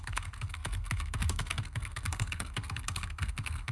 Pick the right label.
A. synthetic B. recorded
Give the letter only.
A